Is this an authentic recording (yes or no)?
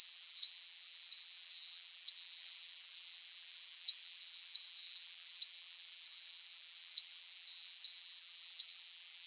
no